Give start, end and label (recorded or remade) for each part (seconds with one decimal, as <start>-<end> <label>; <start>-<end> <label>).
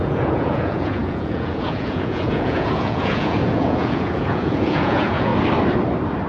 0.0-5.3 remade; 5.3-6.3 recorded